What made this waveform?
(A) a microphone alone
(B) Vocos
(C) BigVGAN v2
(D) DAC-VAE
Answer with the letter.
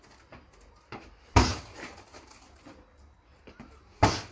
A